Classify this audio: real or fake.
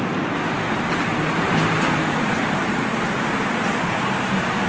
fake